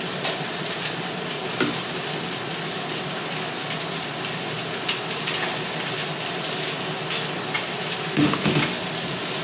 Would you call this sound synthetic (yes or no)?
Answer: no